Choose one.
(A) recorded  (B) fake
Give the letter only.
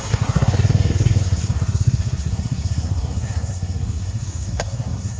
B